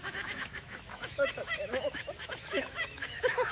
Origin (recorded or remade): remade